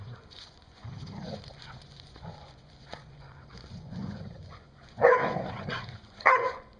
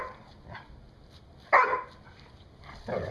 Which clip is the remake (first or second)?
first